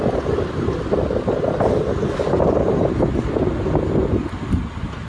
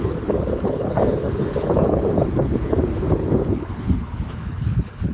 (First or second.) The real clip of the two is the first